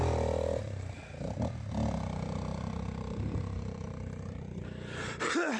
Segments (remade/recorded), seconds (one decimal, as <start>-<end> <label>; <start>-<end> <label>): 0.0-2.5 recorded; 2.5-4.6 remade; 4.6-5.6 recorded